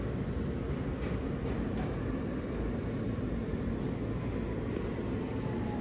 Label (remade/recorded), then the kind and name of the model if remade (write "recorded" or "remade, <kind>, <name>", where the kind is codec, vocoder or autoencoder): recorded